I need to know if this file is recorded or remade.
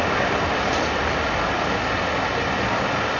recorded